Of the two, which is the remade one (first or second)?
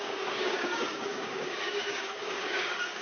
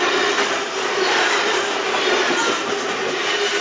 first